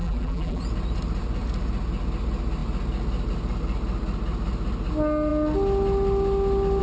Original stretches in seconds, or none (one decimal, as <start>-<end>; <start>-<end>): 0.6-6.8